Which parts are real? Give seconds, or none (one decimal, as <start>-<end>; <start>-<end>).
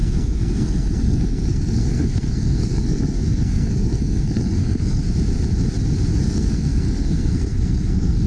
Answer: 5.0-6.1